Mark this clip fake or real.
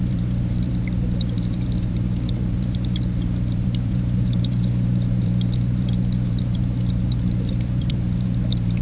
fake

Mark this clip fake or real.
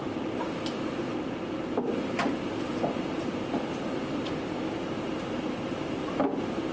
real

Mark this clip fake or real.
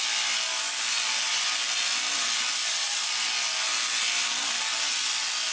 real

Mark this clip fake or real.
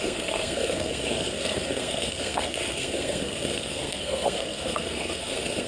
fake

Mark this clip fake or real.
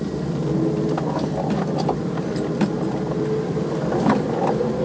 real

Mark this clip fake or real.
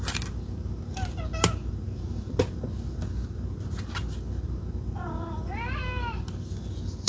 real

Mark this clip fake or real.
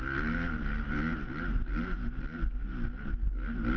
real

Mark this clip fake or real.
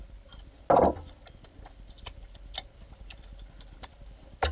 real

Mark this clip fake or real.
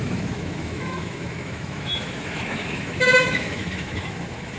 fake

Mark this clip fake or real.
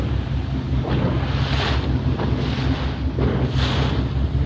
real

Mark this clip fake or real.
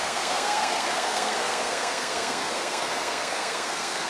fake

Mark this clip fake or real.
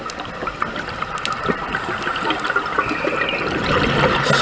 real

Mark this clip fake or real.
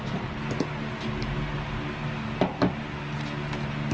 real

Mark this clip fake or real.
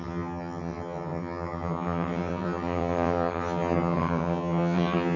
fake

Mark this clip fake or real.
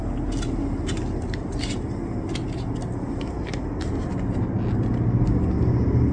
real